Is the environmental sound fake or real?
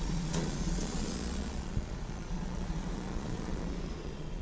fake